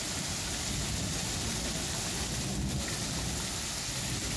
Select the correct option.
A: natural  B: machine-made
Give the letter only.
A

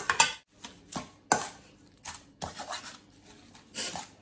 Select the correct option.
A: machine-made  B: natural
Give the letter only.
B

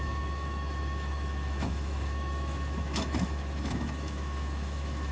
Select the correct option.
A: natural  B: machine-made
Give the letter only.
B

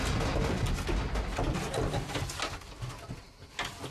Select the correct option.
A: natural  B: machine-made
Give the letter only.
A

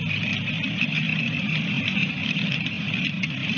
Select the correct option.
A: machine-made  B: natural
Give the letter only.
B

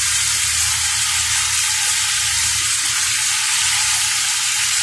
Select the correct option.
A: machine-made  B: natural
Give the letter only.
B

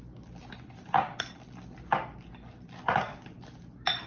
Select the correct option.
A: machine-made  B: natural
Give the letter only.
B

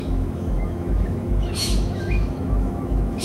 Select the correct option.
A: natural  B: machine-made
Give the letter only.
B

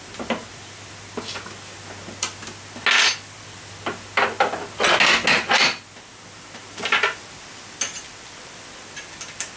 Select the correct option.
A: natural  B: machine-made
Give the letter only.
A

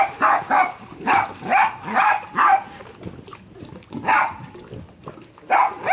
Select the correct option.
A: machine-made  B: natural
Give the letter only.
B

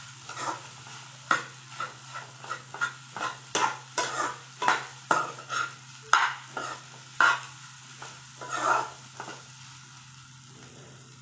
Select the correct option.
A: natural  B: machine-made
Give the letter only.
A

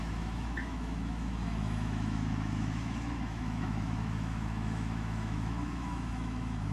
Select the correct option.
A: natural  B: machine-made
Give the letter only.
B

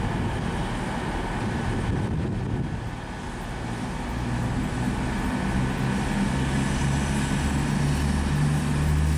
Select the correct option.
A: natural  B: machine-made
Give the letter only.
A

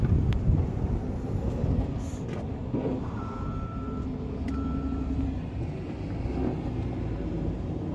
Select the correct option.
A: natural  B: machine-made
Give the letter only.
A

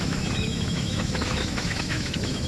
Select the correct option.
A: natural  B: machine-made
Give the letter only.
B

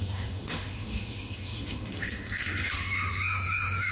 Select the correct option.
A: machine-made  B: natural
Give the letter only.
A